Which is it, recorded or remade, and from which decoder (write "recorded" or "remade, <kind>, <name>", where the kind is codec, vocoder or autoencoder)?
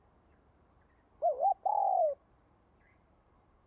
remade, vocoder, BigVGAN v2